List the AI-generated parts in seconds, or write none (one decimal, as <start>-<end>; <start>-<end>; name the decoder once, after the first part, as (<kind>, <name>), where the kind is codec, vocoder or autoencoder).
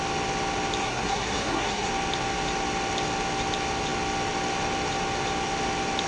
0.8-1.9 (codec, SNAC)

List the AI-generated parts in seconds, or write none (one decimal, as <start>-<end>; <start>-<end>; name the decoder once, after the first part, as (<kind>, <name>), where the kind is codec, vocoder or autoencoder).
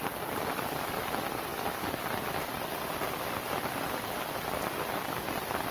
0.0-5.7 (vocoder, BigVGAN v2)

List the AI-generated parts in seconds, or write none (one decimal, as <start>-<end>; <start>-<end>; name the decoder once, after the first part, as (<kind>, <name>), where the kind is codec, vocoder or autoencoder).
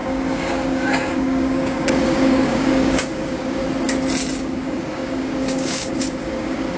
0.0-3.6 (codec, DAC); 4.4-6.8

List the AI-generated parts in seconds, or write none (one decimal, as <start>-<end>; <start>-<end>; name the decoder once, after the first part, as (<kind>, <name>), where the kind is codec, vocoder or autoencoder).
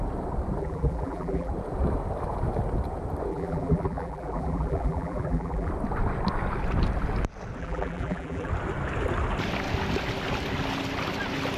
0.6-1.5 (vocoder, BigVGAN v2); 3.3-5.7; 7.6-8.5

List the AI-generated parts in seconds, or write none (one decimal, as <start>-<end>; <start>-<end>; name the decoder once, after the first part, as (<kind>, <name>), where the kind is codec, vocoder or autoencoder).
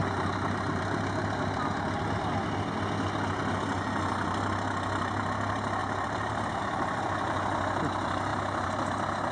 0.0-1.3 (vocoder, BigVGAN v2); 5.8-6.6; 8.3-8.9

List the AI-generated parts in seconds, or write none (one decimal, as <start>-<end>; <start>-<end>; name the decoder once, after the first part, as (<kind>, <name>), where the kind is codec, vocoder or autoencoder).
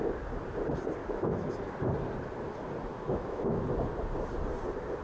1.0-1.5 (autoencoder, DAC-VAE); 2.9-3.6